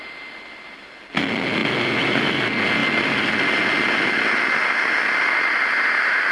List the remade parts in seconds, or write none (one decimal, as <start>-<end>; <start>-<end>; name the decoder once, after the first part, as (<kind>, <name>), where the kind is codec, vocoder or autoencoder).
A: none